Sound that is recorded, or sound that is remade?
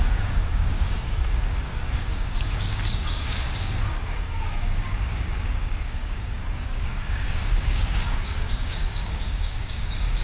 remade